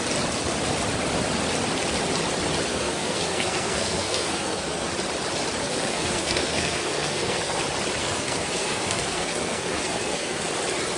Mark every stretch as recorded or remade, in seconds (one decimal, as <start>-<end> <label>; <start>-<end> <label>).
0.0-2.7 recorded; 2.7-4.9 remade; 4.9-5.6 recorded; 5.6-7.6 remade; 7.6-8.0 recorded; 8.0-10.5 remade; 10.5-11.0 recorded